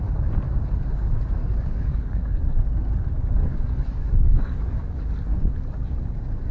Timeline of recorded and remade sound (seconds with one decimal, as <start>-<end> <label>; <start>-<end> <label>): 0.0-1.4 recorded; 1.4-2.4 remade; 2.4-3.5 recorded; 3.5-4.8 remade; 4.8-6.5 recorded